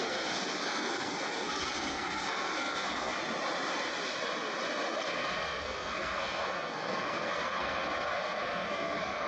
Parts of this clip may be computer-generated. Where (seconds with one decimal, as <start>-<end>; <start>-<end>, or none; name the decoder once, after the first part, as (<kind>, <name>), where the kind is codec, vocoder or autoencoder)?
0.0-3.2 (codec, SNAC); 5.0-9.3